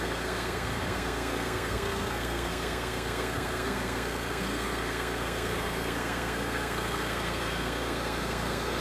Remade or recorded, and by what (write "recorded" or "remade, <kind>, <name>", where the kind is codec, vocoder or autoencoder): remade, codec, SNAC